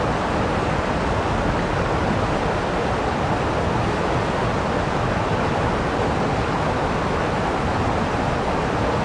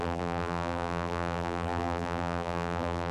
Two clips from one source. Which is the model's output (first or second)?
second